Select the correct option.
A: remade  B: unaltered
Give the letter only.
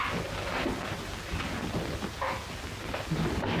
B